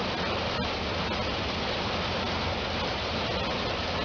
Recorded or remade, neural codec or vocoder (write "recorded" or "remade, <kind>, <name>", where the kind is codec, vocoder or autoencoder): recorded